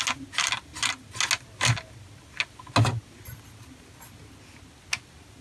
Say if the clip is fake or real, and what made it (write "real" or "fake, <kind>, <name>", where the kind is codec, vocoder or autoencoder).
real